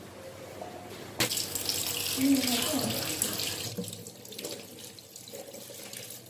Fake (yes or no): no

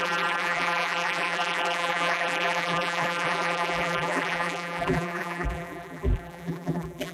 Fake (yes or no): yes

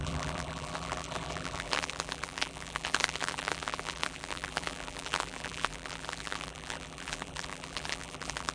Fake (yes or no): yes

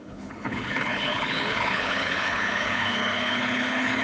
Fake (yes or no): yes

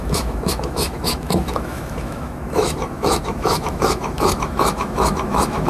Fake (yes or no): yes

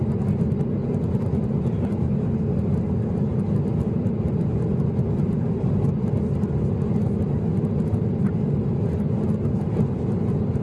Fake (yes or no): no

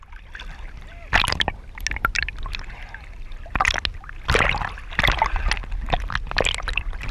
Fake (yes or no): no